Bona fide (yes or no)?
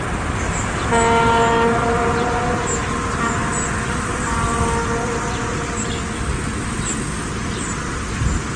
yes